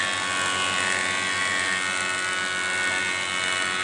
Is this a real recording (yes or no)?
yes